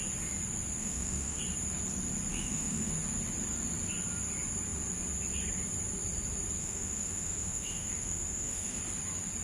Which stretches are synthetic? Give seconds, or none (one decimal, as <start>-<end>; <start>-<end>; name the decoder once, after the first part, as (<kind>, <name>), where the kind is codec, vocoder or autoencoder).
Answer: 0.8-1.4 (autoencoder, DAC-VAE); 2.3-2.9; 6.6-8.8